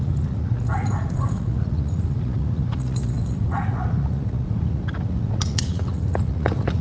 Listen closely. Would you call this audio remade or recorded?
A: remade